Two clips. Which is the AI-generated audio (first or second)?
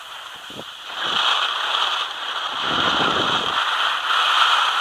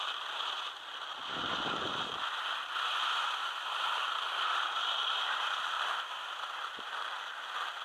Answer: first